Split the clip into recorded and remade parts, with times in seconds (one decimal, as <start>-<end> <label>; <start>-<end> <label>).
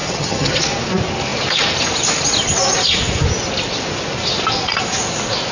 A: 0.0-0.6 remade; 0.6-5.5 recorded